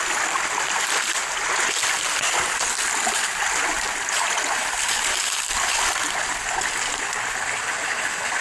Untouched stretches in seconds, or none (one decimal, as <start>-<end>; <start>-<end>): 0.0-8.4